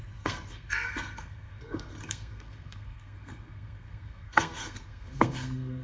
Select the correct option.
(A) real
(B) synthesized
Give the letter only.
B